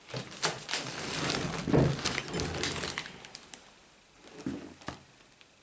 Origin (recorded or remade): recorded